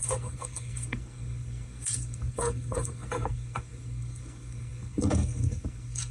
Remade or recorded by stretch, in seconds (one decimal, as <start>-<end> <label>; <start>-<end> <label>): 0.0-6.1 remade